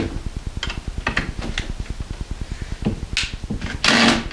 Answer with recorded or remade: recorded